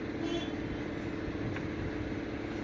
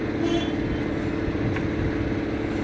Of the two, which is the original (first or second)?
second